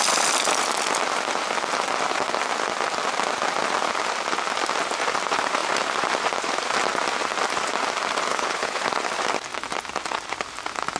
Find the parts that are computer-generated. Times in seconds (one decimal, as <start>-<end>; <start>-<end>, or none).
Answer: 8.3-8.9